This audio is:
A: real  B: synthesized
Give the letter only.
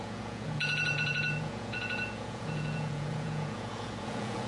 B